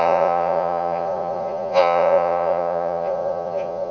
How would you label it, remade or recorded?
remade